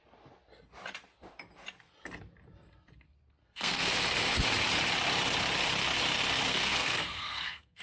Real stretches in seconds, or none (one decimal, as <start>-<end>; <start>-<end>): 0.0-3.4; 4.0-6.5